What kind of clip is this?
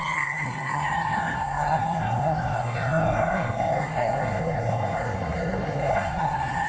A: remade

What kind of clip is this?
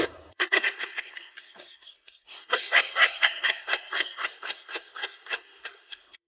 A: remade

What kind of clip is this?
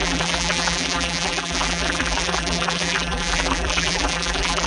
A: remade